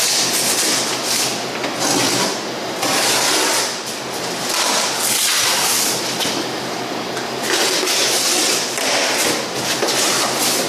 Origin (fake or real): real